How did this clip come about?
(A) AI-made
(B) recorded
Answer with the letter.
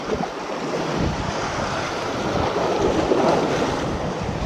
B